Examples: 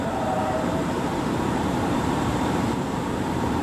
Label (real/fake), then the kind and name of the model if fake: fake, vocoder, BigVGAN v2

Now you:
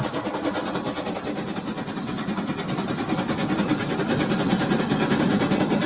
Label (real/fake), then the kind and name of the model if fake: real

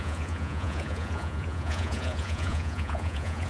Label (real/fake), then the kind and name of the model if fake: fake, vocoder, Vocos